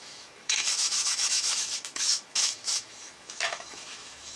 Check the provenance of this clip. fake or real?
fake